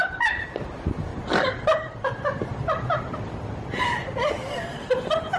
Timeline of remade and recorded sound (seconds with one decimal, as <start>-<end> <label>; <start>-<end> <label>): 0.0-1.1 remade; 1.1-2.0 recorded; 2.0-5.4 remade